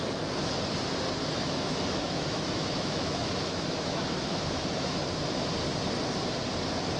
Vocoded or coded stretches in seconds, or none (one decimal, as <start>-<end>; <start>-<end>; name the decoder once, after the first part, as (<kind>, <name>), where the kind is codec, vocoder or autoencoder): 1.2-5.0 (autoencoder, DAC-VAE)

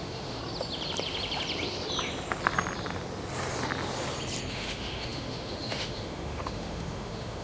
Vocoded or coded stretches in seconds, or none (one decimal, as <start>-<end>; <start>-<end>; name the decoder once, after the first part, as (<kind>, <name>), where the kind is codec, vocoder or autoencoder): 0.0-0.4 (autoencoder, DAC-VAE); 4.5-7.4

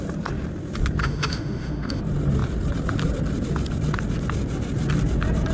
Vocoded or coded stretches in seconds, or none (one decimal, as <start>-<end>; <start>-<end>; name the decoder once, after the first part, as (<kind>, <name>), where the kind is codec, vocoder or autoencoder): 1.0-2.0 (autoencoder, DAC-VAE)

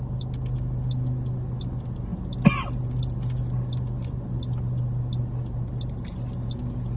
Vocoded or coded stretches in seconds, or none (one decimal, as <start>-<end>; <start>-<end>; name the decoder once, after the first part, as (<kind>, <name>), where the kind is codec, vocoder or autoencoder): none

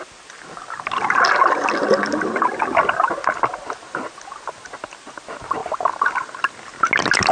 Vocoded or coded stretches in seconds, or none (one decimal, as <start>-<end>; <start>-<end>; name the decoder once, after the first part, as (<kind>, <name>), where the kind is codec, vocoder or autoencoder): none